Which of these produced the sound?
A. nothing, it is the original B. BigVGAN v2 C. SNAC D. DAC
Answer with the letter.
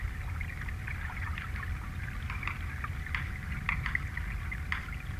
A